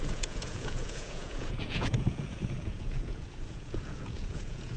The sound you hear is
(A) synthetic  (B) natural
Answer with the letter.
A